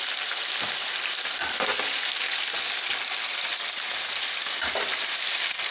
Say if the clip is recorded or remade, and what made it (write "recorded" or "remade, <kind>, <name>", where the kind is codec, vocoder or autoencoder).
recorded